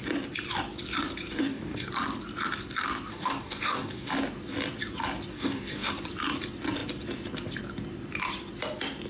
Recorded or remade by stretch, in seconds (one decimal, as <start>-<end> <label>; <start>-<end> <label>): 0.0-1.3 recorded; 1.3-1.9 remade; 1.9-3.1 recorded; 3.1-4.1 remade; 4.1-5.3 recorded; 5.3-5.9 remade; 5.9-9.1 recorded